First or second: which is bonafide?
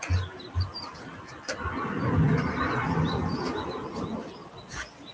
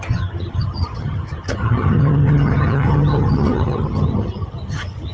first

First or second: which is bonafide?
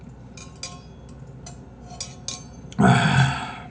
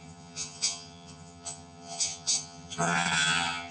first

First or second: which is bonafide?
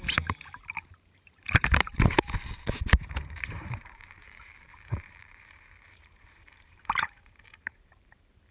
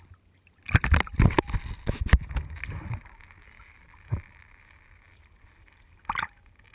second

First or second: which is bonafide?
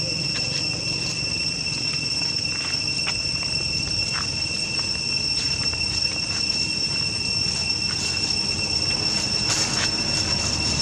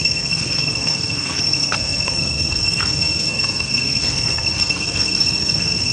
first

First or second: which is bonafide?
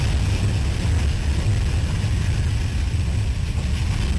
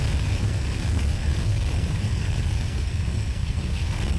first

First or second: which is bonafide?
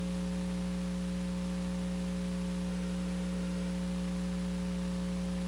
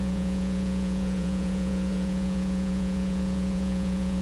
first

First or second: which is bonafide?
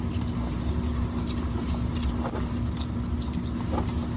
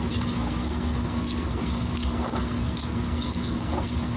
first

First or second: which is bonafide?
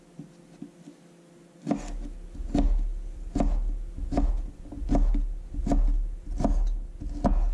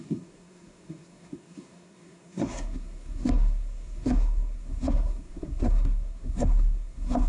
first